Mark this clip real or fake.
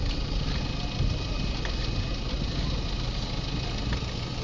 real